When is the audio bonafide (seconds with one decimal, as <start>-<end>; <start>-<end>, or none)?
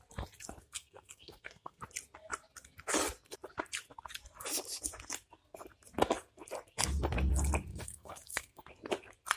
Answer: 0.0-0.6; 1.8-7.7; 8.6-9.4